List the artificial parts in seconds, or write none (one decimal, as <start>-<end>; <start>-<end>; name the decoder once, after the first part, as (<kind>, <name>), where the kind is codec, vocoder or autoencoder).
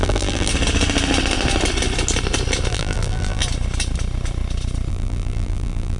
0.0-0.5 (vocoder, BigVGAN v2); 2.7-3.4; 4.9-6.0